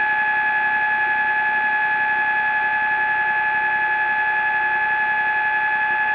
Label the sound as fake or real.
real